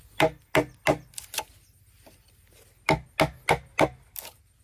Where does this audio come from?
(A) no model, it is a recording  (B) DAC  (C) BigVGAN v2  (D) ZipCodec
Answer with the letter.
A